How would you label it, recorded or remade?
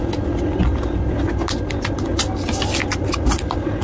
recorded